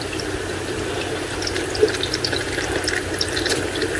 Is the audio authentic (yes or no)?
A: no